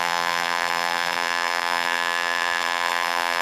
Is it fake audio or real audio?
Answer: fake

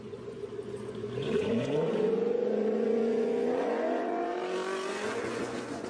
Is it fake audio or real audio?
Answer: fake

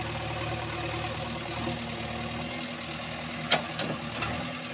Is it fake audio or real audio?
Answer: real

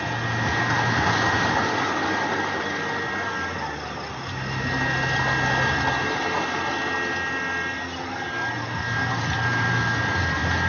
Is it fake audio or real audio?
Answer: real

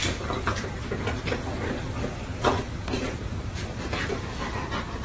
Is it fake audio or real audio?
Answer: real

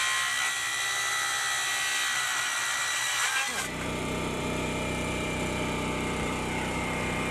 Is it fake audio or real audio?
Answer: fake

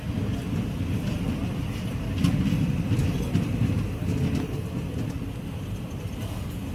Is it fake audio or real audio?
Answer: real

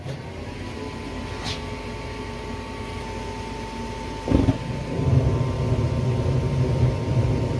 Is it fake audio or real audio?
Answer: real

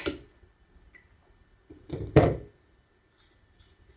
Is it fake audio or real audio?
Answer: real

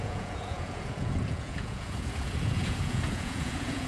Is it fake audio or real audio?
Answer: fake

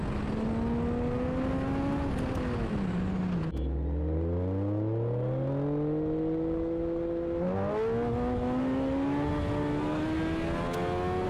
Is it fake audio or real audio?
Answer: real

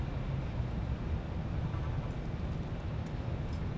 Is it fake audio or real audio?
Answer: real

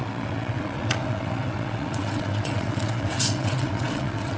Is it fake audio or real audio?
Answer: fake